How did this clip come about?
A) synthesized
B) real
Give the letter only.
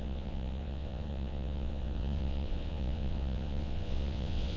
A